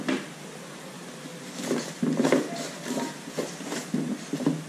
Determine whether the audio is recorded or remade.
recorded